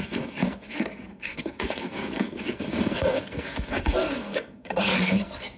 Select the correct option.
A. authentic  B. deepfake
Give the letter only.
B